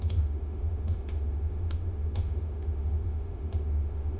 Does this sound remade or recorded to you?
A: remade